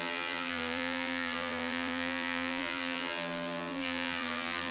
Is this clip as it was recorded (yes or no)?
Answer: no